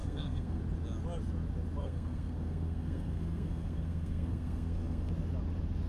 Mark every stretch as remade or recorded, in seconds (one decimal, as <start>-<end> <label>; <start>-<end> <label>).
0.0-0.6 remade; 0.6-1.8 recorded; 1.8-5.1 remade; 5.1-5.9 recorded